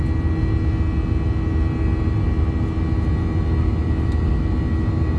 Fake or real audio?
real